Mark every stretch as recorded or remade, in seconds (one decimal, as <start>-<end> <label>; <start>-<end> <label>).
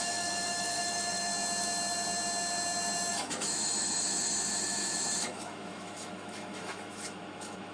0.0-1.3 remade; 1.3-3.1 recorded; 3.1-7.7 remade